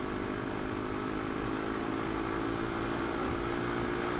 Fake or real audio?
real